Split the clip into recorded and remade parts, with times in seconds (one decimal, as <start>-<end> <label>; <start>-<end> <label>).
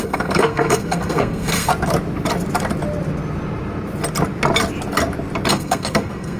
0.0-1.7 remade; 1.7-5.5 recorded; 5.5-6.4 remade